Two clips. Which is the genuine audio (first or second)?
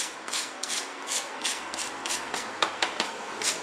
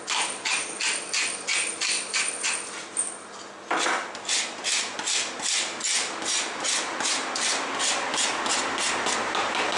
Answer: second